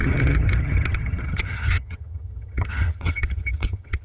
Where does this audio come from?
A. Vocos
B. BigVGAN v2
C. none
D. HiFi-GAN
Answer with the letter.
D